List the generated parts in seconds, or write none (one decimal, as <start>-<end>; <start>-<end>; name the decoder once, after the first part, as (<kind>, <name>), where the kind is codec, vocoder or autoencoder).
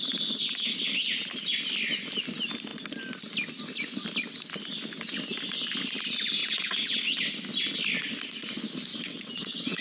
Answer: 6.4-7.3 (vocoder, WaveNeXt); 8.9-9.8